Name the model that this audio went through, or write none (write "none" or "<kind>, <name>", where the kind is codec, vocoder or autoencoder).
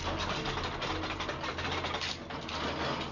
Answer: none